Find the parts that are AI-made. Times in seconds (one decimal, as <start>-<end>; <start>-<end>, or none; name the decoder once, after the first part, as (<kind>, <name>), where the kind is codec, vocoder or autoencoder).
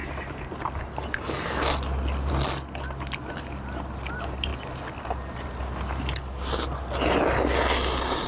none